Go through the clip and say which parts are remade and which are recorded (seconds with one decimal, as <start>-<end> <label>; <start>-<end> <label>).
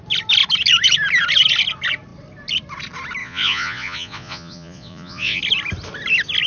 0.0-3.2 recorded; 3.2-5.4 remade; 5.4-6.5 recorded